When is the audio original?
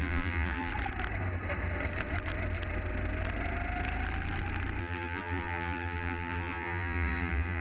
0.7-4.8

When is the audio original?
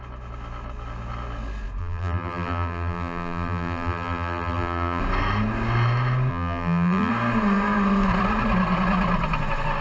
0.0-1.8; 5.0-6.3; 7.1-9.8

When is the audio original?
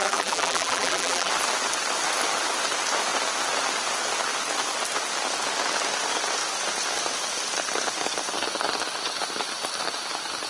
1.3-10.5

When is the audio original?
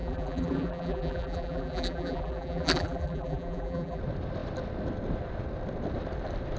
4.0-6.6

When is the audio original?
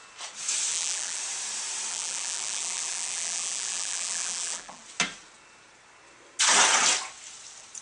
0.0-0.7; 1.2-1.9; 4.8-7.8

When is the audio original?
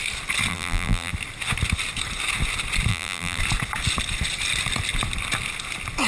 0.0-0.5; 1.1-2.9; 3.4-6.1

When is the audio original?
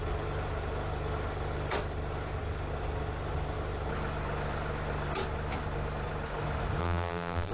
0.0-6.8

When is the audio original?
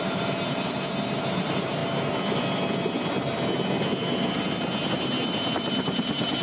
1.8-4.9